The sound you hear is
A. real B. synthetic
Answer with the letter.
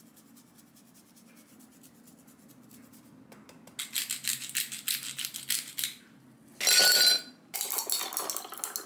A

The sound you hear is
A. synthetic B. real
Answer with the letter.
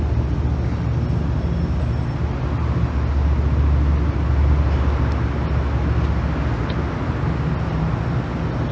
B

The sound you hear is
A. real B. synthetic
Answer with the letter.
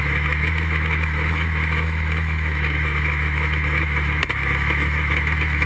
B